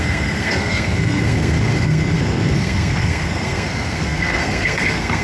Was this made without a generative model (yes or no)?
no